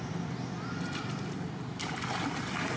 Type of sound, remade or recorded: recorded